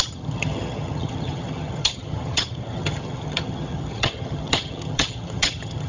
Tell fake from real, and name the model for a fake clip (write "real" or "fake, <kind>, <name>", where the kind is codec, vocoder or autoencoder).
fake, vocoder, HiFi-GAN